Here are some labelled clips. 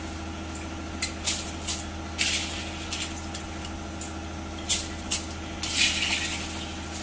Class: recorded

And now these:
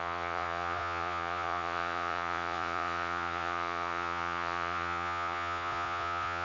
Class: remade